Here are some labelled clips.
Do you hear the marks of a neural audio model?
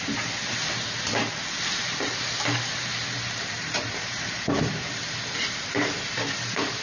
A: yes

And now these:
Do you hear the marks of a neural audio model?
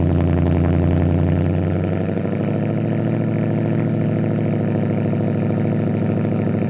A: no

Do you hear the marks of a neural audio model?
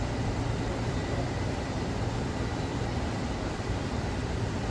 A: yes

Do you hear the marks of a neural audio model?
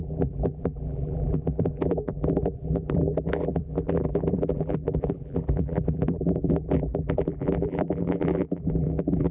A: yes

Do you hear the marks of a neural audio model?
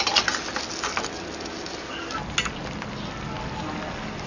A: no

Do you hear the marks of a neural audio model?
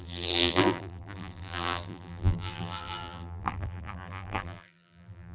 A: yes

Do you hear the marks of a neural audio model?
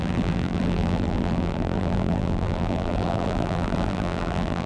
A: yes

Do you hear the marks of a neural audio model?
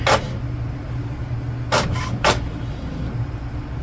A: no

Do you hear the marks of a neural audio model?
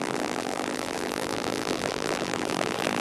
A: yes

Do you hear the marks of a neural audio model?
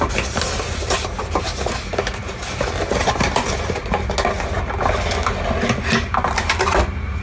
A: no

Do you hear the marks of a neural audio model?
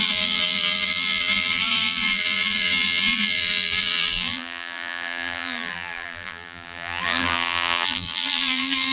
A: yes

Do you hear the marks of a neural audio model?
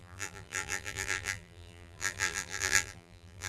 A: yes